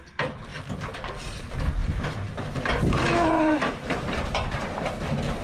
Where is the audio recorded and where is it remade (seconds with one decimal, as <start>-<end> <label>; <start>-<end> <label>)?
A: 0.0-1.8 recorded; 1.8-5.0 remade; 5.0-5.4 recorded